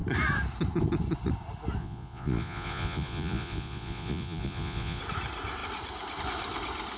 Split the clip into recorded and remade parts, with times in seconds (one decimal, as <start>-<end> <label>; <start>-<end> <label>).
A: 0.0-1.8 recorded; 1.8-5.0 remade; 5.0-7.0 recorded